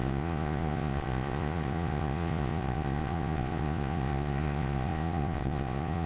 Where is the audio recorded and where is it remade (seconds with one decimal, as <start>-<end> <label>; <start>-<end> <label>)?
0.0-6.1 remade